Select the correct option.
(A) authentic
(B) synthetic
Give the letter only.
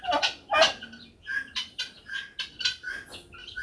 A